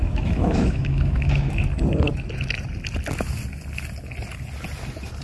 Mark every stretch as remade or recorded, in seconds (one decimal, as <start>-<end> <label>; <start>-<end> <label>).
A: 0.0-1.5 remade; 1.5-5.2 recorded